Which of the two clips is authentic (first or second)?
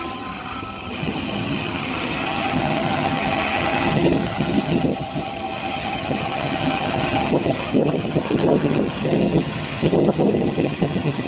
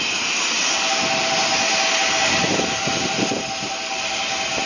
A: second